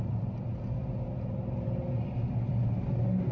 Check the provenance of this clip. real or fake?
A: real